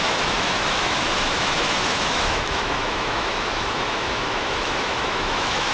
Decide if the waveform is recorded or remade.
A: remade